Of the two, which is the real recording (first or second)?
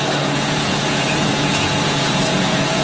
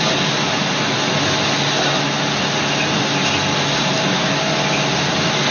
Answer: second